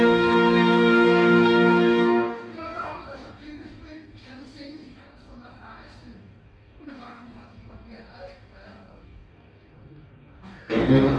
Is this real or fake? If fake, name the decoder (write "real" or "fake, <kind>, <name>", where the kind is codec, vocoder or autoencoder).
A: fake, codec, DAC